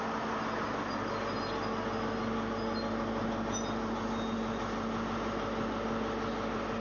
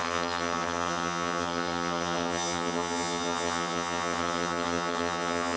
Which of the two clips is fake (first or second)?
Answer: second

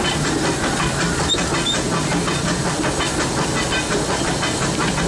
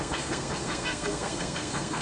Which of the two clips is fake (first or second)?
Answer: second